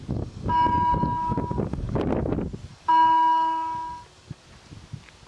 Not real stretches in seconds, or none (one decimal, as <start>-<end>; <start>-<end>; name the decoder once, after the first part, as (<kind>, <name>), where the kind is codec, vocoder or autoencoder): 0.0-2.0 (codec, DAC); 2.7-4.4